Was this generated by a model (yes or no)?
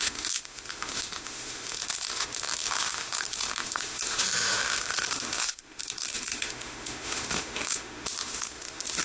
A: yes